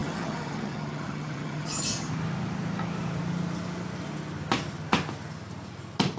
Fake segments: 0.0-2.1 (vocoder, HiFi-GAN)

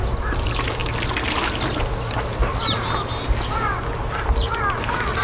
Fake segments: none